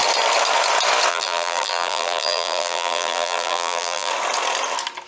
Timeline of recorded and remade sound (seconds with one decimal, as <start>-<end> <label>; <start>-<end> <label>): 0.0-1.1 recorded; 1.1-4.1 remade; 4.1-5.1 recorded